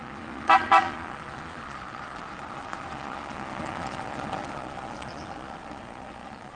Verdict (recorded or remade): remade